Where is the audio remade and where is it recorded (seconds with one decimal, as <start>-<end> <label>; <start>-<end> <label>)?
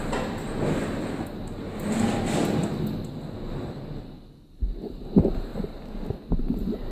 0.0-6.9 recorded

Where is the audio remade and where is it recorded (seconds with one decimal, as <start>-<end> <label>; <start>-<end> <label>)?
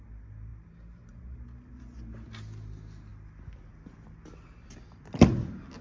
0.0-5.8 recorded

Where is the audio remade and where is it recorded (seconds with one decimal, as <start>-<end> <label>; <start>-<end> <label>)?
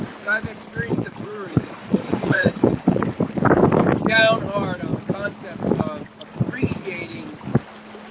0.0-0.9 recorded; 0.9-3.0 remade; 3.0-8.1 recorded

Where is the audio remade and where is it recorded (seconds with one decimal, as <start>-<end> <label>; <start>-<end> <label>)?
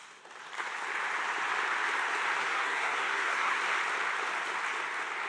0.0-2.4 recorded; 2.4-3.6 remade; 3.6-5.3 recorded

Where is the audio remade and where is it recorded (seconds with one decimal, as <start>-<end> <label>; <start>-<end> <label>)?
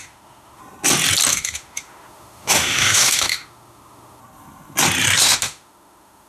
0.0-0.6 remade; 0.6-1.3 recorded; 1.3-4.2 remade; 4.2-5.2 recorded; 5.2-6.3 remade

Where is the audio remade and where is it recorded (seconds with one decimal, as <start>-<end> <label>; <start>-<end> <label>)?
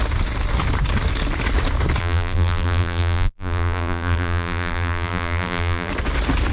0.0-2.0 recorded; 2.0-5.9 remade; 5.9-6.5 recorded